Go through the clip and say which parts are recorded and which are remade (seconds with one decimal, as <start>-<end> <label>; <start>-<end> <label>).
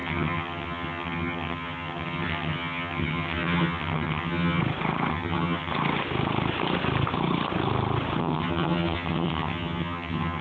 0.0-4.6 remade; 4.6-5.1 recorded; 5.1-5.7 remade; 5.7-8.2 recorded; 8.2-10.4 remade